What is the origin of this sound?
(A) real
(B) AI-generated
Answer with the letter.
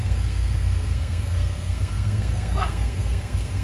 B